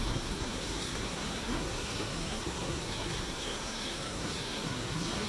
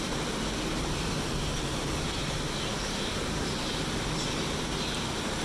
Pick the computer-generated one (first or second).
first